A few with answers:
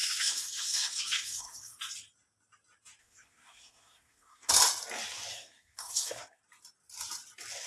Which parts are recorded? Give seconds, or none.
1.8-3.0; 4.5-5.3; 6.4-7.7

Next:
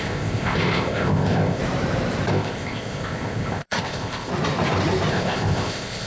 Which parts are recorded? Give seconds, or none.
1.6-2.3; 4.3-5.1

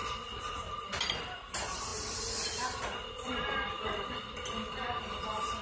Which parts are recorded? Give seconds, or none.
0.0-5.6

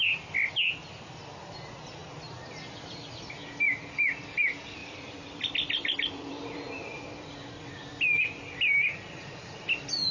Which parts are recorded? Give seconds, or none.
0.0-4.8; 7.6-10.1

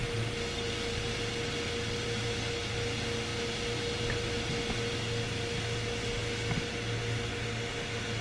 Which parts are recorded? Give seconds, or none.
0.0-8.2

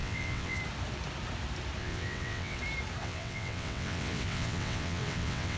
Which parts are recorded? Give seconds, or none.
0.6-1.8; 2.6-3.0

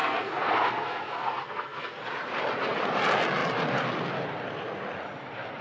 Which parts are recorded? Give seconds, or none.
2.0-5.6